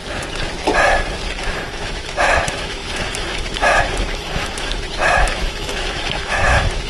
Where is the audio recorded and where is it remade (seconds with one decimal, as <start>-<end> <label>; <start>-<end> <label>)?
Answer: 0.0-1.3 recorded; 1.3-6.9 remade